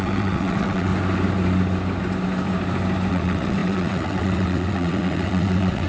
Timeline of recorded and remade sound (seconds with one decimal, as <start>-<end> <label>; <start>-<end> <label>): 0.0-0.9 remade; 0.9-3.1 recorded; 3.1-5.9 remade